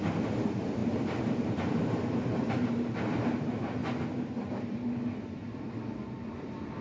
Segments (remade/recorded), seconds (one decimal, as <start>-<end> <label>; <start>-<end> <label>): 0.0-3.8 remade; 3.8-6.8 recorded